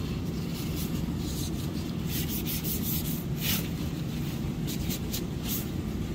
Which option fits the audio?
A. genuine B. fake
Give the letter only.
B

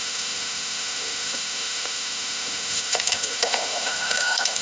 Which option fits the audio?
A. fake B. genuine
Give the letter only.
A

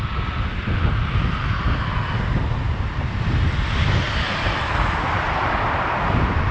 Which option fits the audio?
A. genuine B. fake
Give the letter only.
A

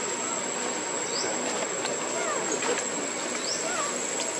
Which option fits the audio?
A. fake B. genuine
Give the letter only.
B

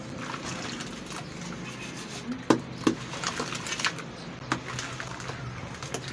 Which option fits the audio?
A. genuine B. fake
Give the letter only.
A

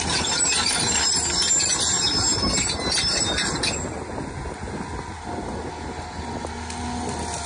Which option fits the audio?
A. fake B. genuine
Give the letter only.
B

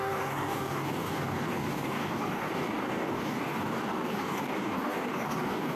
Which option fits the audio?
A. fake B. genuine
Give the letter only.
A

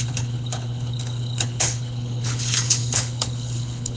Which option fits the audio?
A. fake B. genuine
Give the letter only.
A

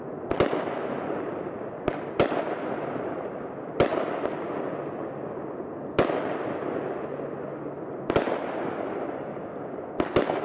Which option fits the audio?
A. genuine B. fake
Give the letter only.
A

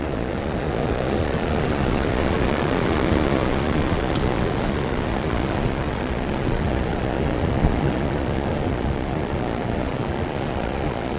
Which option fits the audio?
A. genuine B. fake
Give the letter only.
B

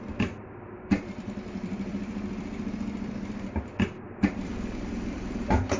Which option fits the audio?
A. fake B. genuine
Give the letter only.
A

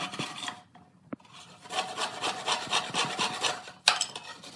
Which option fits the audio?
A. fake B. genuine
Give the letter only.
B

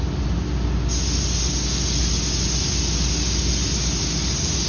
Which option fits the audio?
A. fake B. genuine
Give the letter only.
B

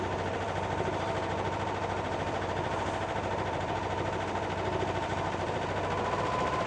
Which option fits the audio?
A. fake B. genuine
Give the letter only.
A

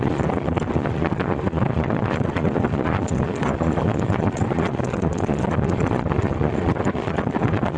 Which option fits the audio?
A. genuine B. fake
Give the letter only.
B